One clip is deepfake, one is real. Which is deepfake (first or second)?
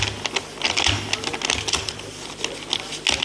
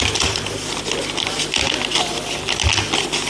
second